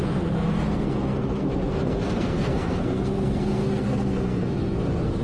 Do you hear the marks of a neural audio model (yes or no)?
yes